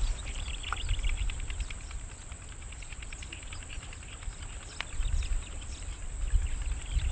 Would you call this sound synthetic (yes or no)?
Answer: no